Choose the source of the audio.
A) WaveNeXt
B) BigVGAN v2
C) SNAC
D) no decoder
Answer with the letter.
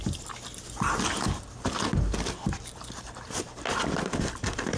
D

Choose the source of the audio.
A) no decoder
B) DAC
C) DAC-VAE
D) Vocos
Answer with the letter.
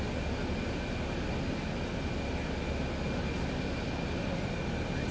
A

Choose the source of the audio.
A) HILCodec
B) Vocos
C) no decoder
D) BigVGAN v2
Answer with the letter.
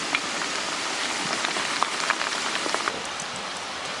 D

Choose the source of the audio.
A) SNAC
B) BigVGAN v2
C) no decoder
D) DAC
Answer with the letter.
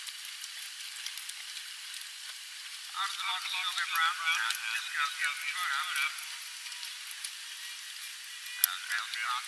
C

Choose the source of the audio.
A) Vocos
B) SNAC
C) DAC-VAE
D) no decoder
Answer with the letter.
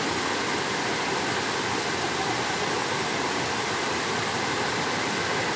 D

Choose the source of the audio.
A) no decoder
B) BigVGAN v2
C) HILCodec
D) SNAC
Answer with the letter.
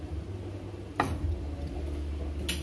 A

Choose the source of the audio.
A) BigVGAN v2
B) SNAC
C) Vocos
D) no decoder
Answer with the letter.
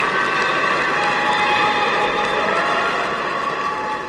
D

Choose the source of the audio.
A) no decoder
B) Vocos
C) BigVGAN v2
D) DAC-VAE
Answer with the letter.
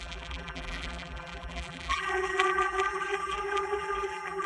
C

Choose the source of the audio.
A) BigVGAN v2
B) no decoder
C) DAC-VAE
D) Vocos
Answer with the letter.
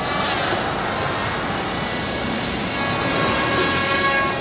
B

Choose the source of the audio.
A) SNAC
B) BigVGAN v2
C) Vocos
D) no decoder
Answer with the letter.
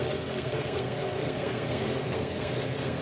A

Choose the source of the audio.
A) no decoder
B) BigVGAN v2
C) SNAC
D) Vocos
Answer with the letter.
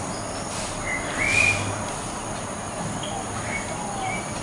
A